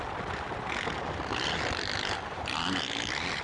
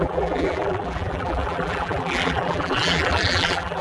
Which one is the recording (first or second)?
first